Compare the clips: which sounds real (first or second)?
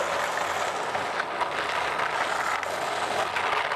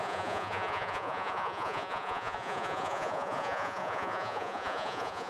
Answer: first